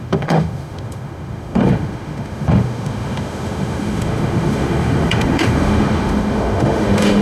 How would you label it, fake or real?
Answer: fake